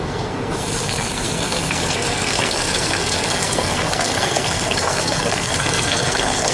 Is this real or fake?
fake